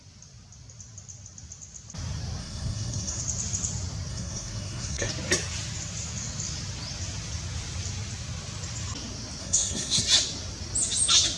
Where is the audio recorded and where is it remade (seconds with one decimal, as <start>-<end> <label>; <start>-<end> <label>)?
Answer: 0.0-2.4 recorded; 2.4-3.2 remade; 3.2-4.1 recorded; 4.1-5.1 remade; 5.1-9.4 recorded; 9.4-10.0 remade; 10.0-11.4 recorded